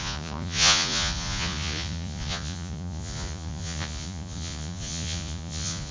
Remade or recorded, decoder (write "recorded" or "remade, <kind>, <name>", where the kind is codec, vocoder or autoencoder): remade, vocoder, Vocos